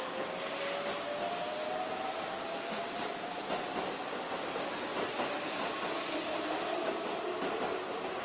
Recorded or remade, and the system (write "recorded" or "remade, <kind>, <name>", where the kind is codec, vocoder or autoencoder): recorded